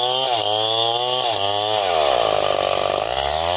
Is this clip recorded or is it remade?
recorded